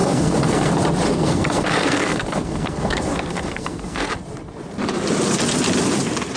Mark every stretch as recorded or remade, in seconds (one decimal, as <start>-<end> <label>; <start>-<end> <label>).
0.0-0.7 remade; 0.7-1.1 recorded; 1.1-4.1 remade; 4.1-6.4 recorded